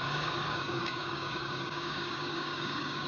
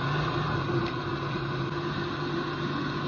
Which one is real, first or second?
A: second